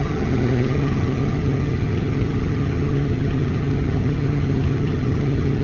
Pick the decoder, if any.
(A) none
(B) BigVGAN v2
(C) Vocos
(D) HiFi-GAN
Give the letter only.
D